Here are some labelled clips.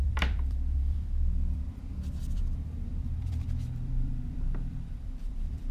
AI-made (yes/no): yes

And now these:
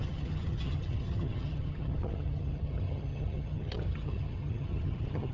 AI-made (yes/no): yes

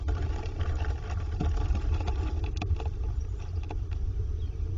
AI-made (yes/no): no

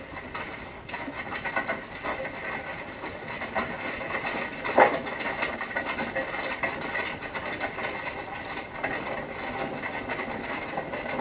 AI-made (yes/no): no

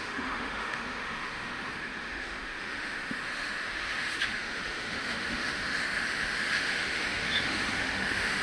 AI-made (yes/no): yes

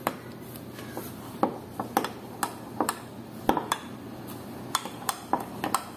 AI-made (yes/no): no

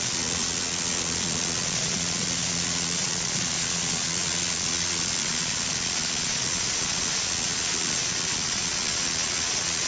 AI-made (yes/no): yes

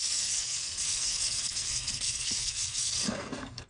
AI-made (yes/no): yes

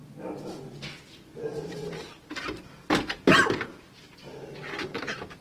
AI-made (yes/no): no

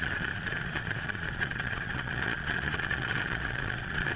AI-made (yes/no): yes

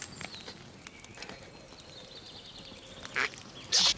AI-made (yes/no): no